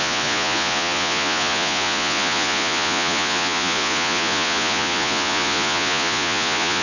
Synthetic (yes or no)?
yes